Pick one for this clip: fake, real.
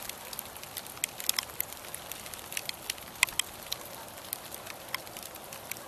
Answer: real